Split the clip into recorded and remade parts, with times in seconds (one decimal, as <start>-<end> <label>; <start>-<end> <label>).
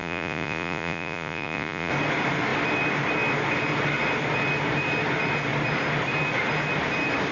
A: 0.0-1.9 remade; 1.9-7.3 recorded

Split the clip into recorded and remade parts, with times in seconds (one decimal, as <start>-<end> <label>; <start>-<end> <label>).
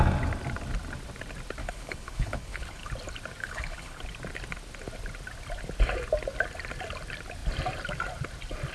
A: 0.0-1.6 recorded; 1.6-2.9 remade; 2.9-3.4 recorded; 3.4-4.0 remade; 4.0-8.7 recorded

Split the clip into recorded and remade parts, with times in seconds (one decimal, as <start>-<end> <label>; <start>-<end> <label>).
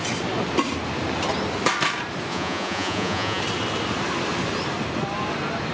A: 0.0-2.3 recorded; 2.3-3.4 remade; 3.4-5.7 recorded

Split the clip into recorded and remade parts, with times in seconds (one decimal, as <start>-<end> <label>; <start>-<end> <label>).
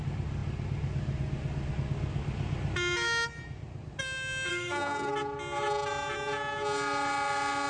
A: 0.0-4.5 recorded; 4.5-5.1 remade; 5.1-7.7 recorded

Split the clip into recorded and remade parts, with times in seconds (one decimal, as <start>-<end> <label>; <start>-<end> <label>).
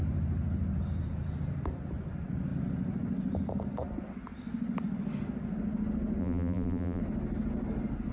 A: 0.0-6.2 recorded; 6.2-7.0 remade; 7.0-8.1 recorded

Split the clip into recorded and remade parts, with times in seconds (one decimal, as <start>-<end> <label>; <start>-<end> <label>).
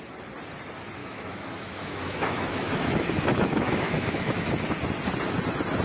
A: 0.0-1.0 recorded; 1.0-4.5 remade; 4.5-5.8 recorded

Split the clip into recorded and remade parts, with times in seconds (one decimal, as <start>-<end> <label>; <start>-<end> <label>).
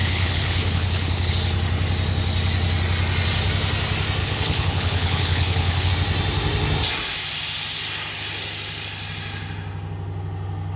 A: 0.0-1.3 remade; 1.3-4.2 recorded; 4.2-5.9 remade; 5.9-10.8 recorded